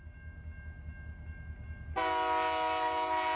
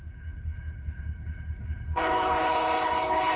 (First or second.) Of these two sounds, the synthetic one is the second